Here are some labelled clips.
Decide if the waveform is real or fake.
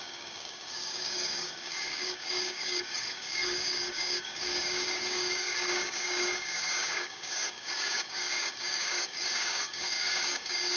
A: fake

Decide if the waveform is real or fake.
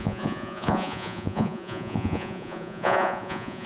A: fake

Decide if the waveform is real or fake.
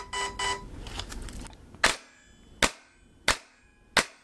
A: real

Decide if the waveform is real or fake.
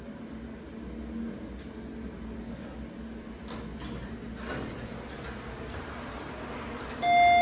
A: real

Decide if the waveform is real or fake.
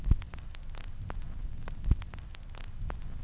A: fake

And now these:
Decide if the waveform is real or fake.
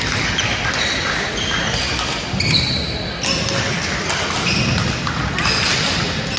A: real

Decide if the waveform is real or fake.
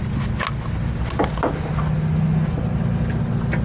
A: real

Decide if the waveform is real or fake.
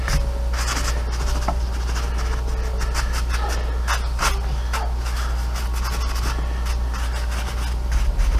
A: real